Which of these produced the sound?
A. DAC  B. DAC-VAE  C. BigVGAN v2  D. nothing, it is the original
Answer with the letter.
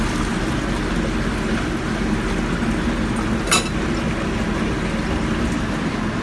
D